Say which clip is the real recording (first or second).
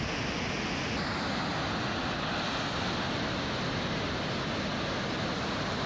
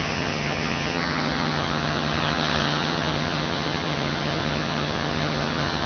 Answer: first